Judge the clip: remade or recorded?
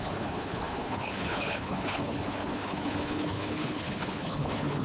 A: remade